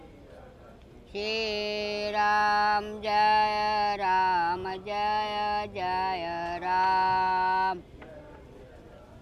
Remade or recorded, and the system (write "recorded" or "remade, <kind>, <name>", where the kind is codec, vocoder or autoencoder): recorded